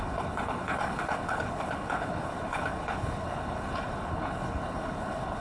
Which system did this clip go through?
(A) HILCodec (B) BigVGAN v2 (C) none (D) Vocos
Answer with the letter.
A